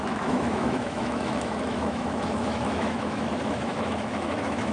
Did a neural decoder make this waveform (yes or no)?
yes